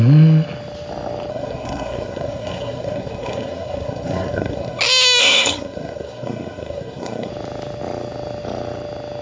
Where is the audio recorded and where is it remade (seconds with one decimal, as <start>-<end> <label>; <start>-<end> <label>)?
0.0-1.3 recorded; 1.3-4.8 remade; 4.8-5.2 recorded; 5.2-7.3 remade; 7.3-9.2 recorded